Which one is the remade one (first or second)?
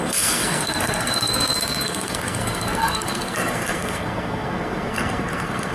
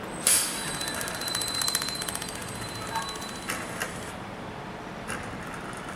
first